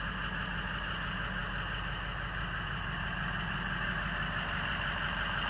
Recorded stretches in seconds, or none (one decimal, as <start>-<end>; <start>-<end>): 0.0-5.5

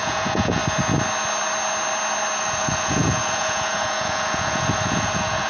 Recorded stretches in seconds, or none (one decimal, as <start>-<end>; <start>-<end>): 0.6-2.4

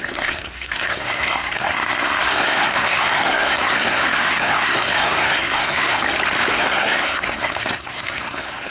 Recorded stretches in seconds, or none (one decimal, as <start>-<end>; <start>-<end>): 6.0-6.5

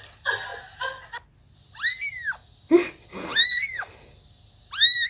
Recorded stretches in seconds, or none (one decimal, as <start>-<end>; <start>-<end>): 0.0-5.1